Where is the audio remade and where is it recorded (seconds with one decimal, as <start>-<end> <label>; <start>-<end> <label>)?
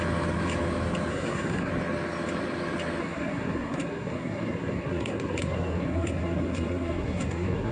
0.0-1.1 recorded; 1.1-1.7 remade; 1.7-3.0 recorded; 3.0-7.7 remade